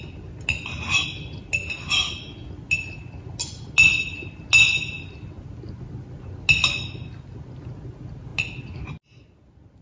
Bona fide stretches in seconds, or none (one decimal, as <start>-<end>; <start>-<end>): 0.0-9.8